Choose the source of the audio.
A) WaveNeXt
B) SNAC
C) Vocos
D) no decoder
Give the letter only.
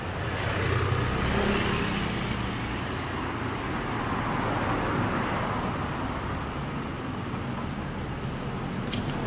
D